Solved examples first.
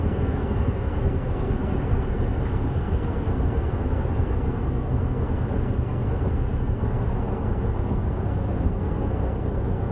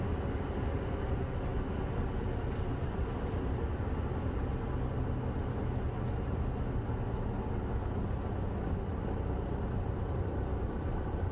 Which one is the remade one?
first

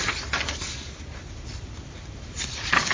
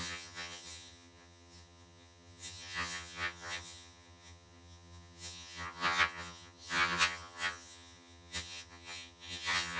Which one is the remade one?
second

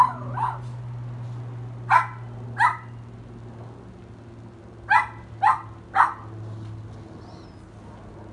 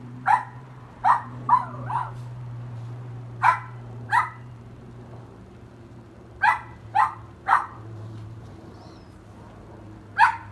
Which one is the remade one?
second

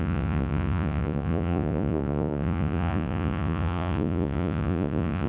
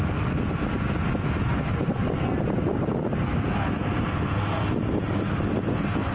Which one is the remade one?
first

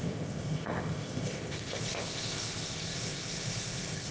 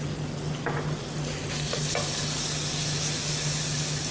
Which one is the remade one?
first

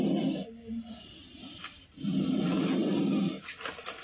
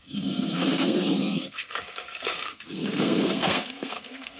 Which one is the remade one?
second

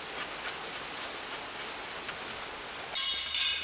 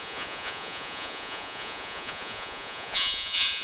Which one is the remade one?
second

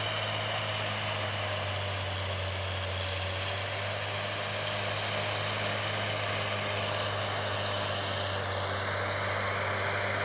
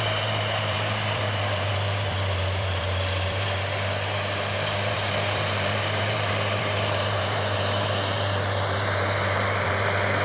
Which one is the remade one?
second